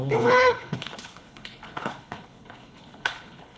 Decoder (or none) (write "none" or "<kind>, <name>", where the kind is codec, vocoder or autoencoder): codec, HILCodec